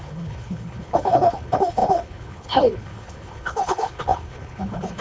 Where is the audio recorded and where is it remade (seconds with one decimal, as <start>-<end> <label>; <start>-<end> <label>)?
0.0-5.0 remade